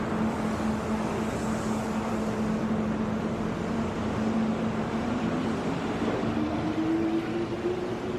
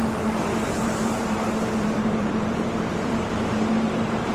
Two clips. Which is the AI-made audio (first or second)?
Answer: second